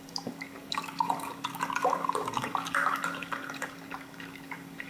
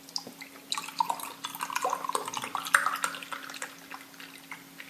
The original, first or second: second